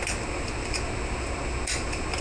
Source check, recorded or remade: recorded